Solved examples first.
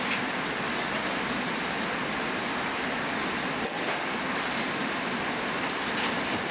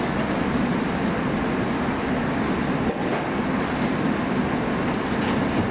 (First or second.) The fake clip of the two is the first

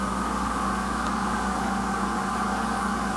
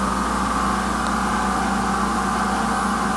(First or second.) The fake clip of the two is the first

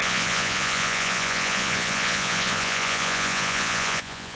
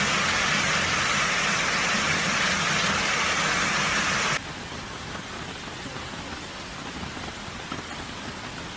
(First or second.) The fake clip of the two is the first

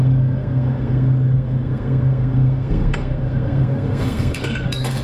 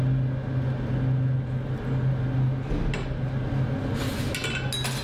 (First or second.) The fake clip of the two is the first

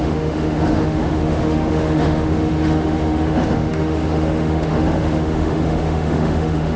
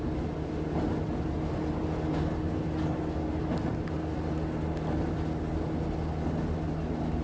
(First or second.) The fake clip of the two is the first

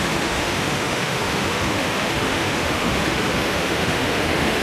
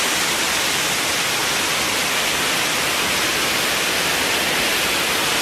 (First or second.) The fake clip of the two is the first